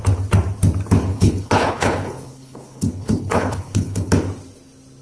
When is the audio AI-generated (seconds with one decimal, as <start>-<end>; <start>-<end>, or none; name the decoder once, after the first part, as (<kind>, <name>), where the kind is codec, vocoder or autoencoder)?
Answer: 1.1-4.1 (codec, HILCodec)